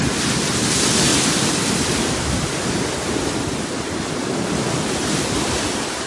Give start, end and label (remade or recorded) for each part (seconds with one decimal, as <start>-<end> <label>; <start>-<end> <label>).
0.0-6.1 recorded